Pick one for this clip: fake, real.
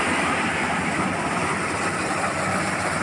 fake